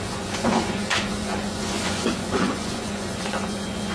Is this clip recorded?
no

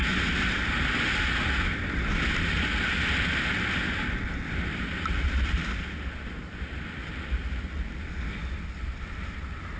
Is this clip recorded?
yes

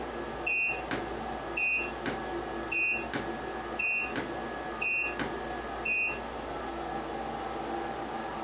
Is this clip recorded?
yes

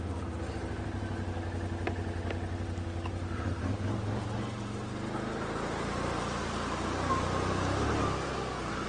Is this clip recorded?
yes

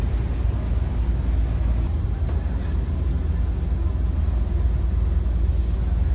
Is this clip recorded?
yes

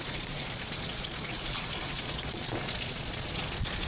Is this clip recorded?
no